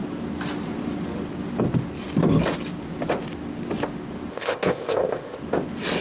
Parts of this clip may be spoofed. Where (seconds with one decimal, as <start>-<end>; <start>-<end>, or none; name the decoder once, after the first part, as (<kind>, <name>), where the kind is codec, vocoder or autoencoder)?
4.3-5.4 (codec, ZipCodec)